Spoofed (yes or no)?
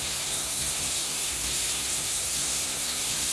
yes